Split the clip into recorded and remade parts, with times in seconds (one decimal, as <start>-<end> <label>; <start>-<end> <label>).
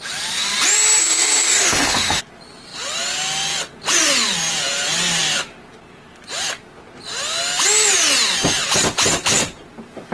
0.0-1.0 recorded; 1.0-2.2 remade; 2.2-10.1 recorded